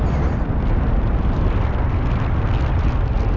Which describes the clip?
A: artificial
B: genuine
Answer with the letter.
B